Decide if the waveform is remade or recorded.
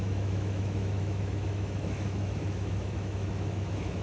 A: remade